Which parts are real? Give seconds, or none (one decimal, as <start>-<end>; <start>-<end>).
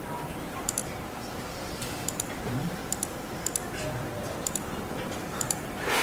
0.8-1.6; 2.8-5.3